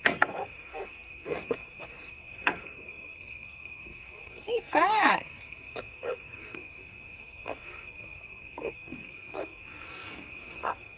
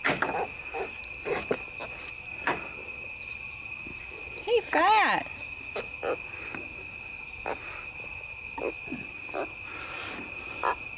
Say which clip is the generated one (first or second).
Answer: first